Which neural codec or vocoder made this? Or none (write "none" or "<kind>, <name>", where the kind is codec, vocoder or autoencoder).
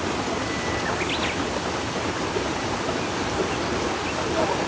none